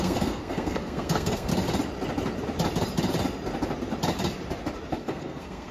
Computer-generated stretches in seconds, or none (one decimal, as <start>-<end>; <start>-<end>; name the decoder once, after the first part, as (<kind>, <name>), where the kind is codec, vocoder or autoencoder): 0.0-1.5 (codec, SNAC); 4.9-5.7